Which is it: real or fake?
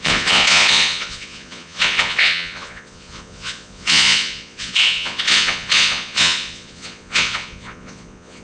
fake